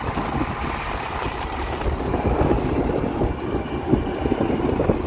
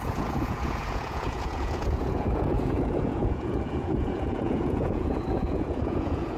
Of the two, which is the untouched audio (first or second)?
first